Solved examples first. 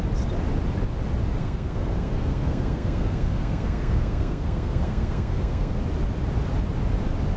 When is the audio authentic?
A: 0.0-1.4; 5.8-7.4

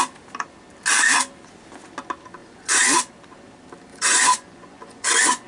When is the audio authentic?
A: 0.0-2.4; 3.1-3.9

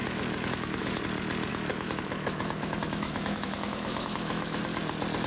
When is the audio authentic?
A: 1.0-1.5; 4.6-5.3

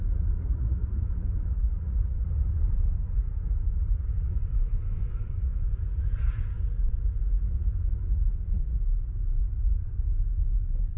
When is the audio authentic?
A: 4.5-5.3; 8.6-9.4; 10.1-11.0

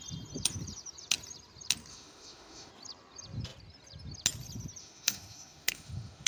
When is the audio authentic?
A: 0.0-1.9; 2.7-4.8

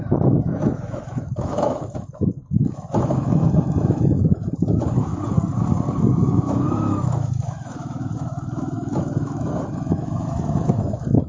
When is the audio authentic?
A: 5.1-6.1

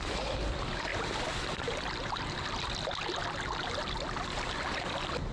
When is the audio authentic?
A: 0.0-5.3